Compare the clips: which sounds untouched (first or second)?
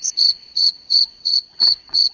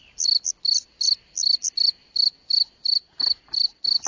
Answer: second